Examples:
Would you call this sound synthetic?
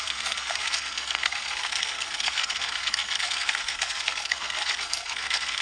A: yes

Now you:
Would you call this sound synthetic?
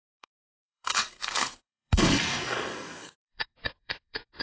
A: yes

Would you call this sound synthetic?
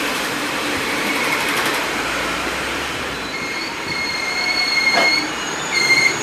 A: yes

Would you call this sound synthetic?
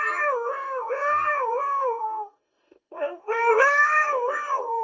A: yes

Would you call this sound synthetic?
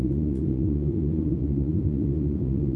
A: yes